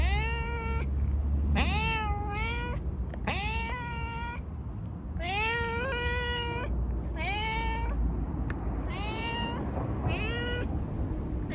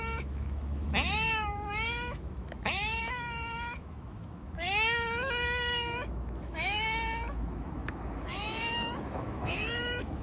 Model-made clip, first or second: second